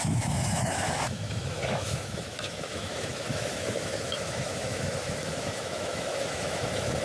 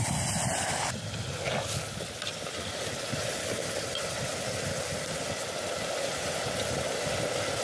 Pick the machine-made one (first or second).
first